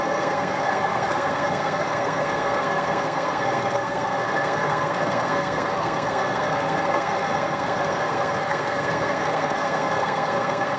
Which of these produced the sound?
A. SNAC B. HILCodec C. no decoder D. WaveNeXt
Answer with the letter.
A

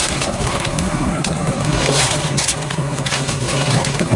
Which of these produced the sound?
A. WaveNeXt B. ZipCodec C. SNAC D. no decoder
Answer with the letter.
C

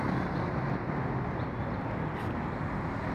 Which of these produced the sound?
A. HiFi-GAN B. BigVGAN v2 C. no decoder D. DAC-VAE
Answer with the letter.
C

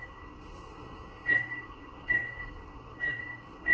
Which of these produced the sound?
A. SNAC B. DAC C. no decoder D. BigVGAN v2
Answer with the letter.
A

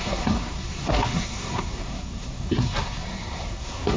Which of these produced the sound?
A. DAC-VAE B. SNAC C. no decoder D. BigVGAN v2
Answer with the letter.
B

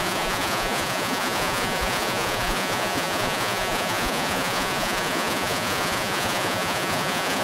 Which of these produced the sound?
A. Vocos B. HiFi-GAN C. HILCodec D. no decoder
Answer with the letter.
A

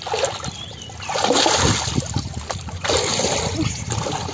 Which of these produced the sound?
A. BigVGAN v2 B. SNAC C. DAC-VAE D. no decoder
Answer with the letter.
D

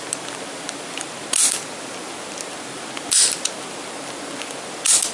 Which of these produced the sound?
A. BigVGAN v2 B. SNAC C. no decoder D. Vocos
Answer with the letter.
C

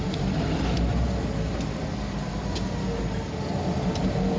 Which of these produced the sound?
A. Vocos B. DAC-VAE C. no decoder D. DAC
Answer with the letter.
C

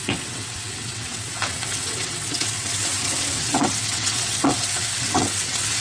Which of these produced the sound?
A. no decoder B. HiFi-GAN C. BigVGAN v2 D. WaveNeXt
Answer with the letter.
D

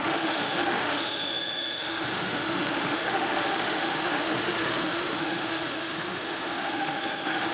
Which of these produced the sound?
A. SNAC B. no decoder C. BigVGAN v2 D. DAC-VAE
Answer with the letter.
D